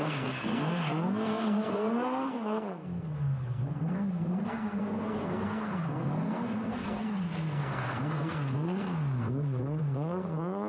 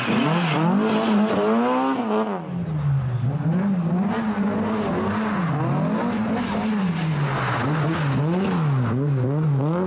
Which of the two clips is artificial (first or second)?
first